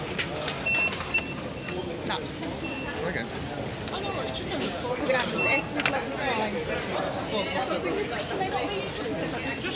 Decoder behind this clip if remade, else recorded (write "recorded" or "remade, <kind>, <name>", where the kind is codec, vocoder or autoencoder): recorded